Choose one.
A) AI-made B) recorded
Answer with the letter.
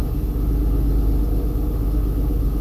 B